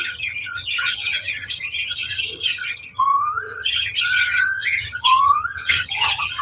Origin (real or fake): fake